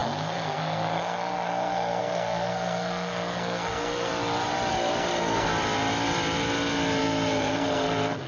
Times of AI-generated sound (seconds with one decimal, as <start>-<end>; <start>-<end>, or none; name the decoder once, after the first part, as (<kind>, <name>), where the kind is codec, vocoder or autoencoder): 0.0-4.1 (codec, SNAC); 4.7-5.5; 7.0-8.3